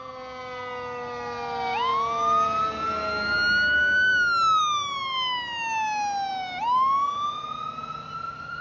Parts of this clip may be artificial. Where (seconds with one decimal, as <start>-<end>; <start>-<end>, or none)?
none